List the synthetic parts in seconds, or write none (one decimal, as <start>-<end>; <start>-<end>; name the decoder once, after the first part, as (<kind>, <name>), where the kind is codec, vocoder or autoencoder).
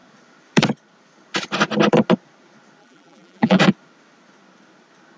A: 2.8-3.6 (vocoder, BigVGAN v2)